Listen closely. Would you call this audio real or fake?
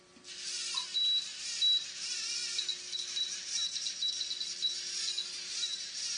real